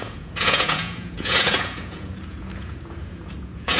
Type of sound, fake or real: fake